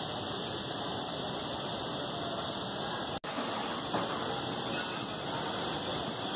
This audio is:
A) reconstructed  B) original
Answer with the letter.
B